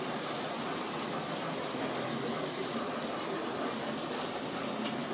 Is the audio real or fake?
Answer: real